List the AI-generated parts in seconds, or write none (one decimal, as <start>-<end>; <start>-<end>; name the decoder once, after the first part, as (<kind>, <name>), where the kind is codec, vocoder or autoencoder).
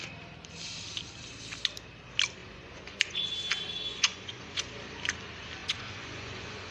2.4-3.3 (vocoder, Vocos); 3.9-4.7; 5.6-6.7